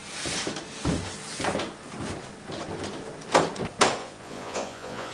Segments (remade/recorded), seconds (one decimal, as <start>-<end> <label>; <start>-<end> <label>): 0.0-4.0 recorded; 4.0-5.1 remade